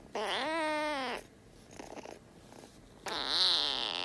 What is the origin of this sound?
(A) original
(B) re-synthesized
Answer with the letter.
A